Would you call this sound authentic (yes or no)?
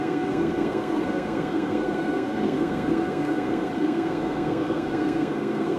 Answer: no